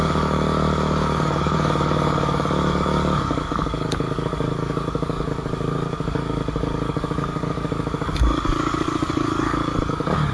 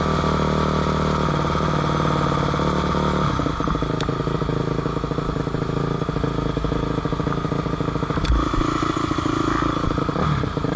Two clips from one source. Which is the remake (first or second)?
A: first